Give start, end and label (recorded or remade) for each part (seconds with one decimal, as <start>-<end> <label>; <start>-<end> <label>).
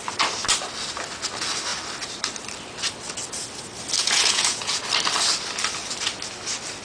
0.0-4.0 recorded; 4.0-4.8 remade; 4.8-6.8 recorded